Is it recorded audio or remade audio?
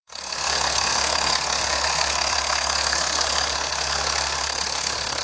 remade